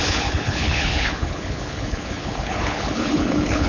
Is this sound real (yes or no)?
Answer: no